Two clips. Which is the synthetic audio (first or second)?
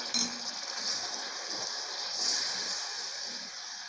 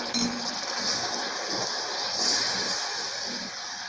first